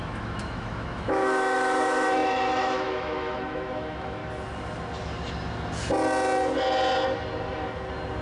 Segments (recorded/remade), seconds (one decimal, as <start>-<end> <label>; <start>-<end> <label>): 0.0-4.2 remade; 4.2-8.2 recorded

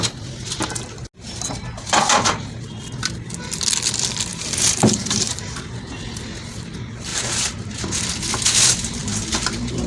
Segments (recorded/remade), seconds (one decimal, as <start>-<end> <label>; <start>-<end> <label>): 0.0-4.3 recorded; 4.3-6.0 remade; 6.0-7.1 recorded; 7.1-7.8 remade; 7.8-9.0 recorded; 9.0-9.9 remade